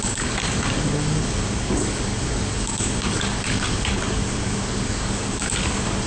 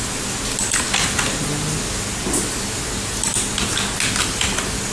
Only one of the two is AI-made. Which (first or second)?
first